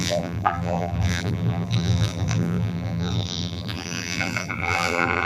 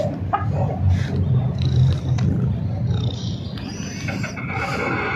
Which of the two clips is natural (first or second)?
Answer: second